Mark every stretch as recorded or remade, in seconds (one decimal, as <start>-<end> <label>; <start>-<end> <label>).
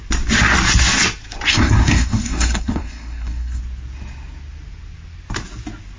0.0-1.5 recorded; 1.5-3.6 remade; 3.6-6.0 recorded